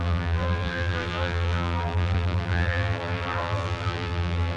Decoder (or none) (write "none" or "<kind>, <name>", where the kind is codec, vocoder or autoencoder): vocoder, BigVGAN v2